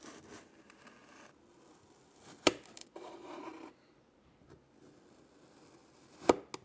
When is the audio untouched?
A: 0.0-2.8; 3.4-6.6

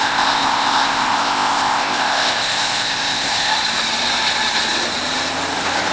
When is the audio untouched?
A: 3.5-5.9

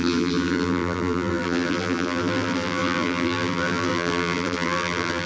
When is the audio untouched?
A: none

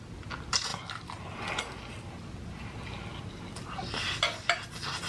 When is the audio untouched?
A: 0.0-5.1

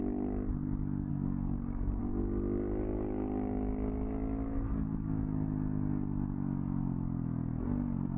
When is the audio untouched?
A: 0.0-1.1; 2.0-8.2

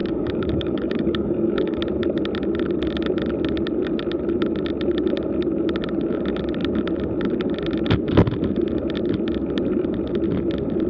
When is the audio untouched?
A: 1.8-10.9